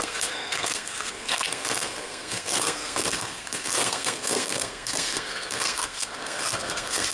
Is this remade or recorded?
remade